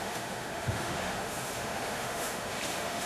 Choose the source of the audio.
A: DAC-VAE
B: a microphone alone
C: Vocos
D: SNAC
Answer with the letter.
A